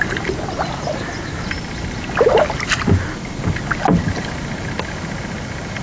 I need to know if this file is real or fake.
real